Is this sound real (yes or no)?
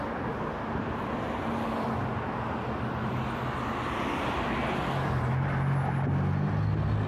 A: yes